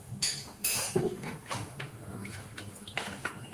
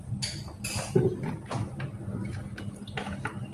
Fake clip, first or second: first